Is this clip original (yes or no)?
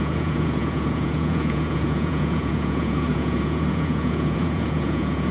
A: no